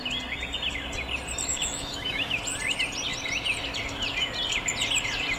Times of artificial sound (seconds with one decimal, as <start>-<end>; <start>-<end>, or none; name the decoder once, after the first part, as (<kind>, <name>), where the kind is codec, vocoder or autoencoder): 1.5-2.4 (autoencoder, DAC-VAE)